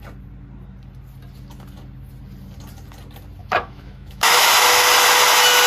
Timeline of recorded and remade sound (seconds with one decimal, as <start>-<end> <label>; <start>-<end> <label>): 0.0-3.4 recorded; 3.4-4.5 remade; 4.5-5.7 recorded